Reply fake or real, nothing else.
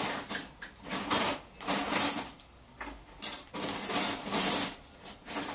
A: real